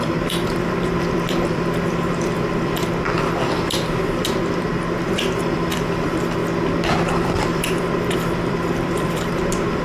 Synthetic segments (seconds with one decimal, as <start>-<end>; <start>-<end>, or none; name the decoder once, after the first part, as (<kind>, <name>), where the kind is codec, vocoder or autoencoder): 0.0-6.4 (vocoder, BigVGAN v2); 7.1-9.8